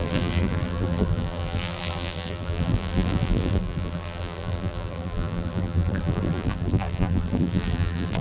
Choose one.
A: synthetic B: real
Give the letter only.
A